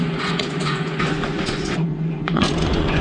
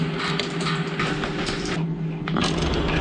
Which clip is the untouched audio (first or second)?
second